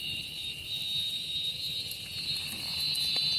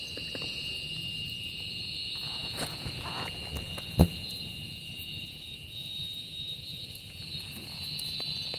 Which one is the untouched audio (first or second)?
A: first